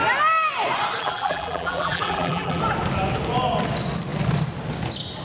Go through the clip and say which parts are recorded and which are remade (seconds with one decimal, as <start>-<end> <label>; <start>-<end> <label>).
0.0-1.0 recorded; 1.0-2.6 remade; 2.6-5.2 recorded